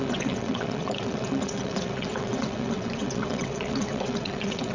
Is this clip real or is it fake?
fake